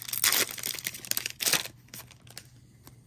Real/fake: real